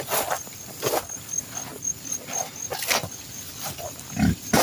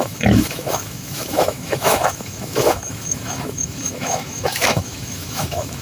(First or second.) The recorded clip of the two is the first